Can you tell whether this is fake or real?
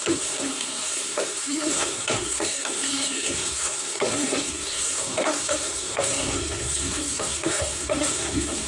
fake